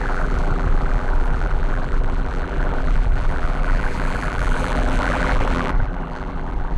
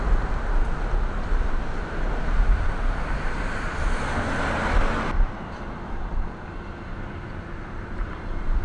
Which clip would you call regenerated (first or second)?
first